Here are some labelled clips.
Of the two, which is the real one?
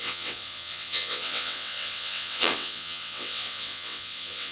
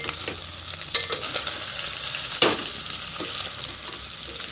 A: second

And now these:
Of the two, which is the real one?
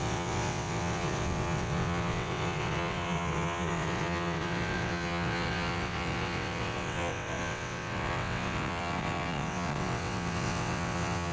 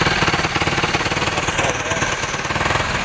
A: second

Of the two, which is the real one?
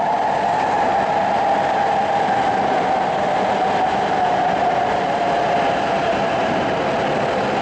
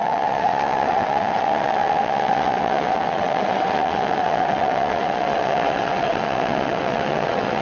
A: first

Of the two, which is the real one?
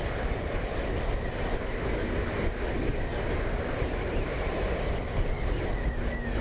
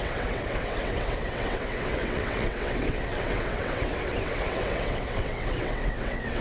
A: first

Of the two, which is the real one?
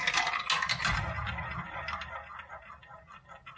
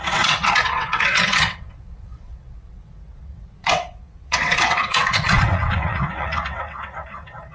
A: first